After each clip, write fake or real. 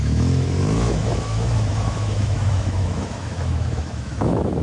fake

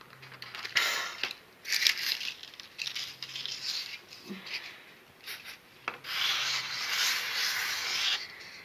real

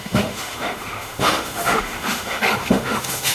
fake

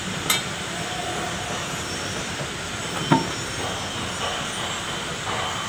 real